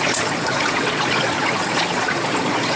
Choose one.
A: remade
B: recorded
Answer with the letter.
A